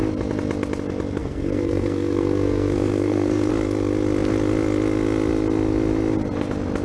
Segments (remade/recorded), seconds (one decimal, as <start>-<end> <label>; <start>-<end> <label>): 0.0-1.2 recorded; 1.2-3.5 remade; 3.5-6.8 recorded